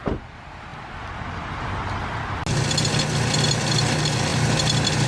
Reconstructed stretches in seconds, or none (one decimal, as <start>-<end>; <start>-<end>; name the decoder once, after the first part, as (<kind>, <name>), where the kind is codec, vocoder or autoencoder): none